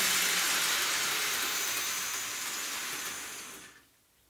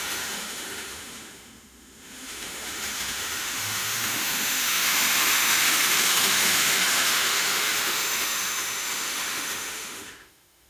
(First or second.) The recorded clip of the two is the first